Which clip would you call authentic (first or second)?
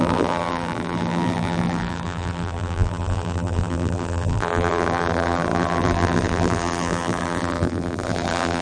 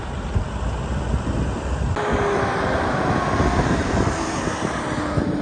second